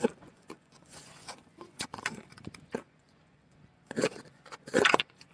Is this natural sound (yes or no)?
no